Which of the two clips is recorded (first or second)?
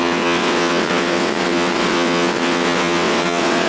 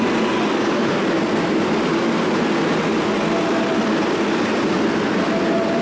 second